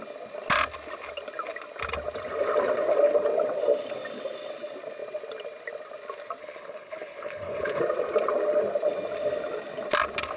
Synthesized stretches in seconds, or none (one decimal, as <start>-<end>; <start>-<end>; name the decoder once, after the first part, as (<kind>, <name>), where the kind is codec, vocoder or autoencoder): 6.4-7.8 (codec, HILCodec)